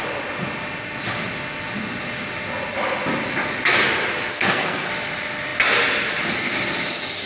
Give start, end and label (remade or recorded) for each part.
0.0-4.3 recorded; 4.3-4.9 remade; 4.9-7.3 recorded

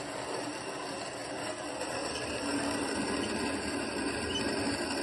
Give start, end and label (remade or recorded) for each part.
0.0-5.0 recorded

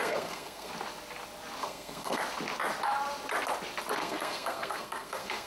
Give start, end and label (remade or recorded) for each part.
0.0-0.7 remade; 0.7-1.6 recorded; 1.6-2.2 remade; 2.2-4.0 recorded; 4.0-5.5 remade

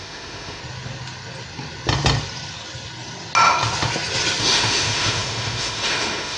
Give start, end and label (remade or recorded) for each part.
0.0-0.6 remade; 0.6-4.4 recorded; 4.4-6.4 remade

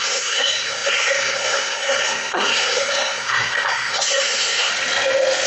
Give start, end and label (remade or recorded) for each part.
0.0-4.7 remade; 4.7-5.5 recorded

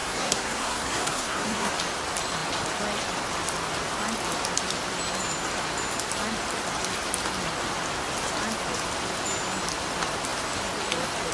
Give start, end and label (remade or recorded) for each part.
0.0-1.7 remade; 1.7-11.3 recorded